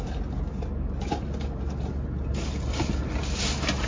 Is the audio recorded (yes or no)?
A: yes